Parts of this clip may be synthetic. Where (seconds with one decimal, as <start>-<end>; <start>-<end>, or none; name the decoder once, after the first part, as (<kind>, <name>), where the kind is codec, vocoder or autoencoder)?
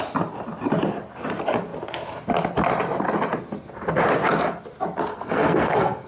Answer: 5.1-6.1 (codec, SNAC)